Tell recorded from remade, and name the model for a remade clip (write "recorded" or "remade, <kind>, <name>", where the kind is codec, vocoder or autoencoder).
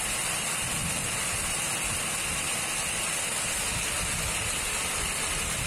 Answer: recorded